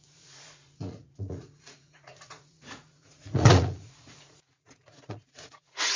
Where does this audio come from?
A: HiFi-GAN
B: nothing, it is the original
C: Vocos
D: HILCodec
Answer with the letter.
C